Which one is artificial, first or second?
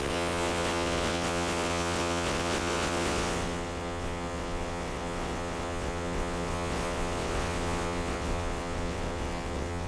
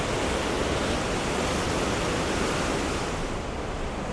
first